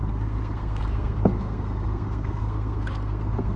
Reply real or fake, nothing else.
fake